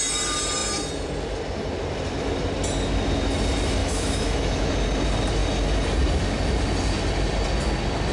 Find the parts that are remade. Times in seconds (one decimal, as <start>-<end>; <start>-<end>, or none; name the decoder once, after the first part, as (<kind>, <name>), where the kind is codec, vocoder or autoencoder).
3.8-4.7 (autoencoder, DAC-VAE)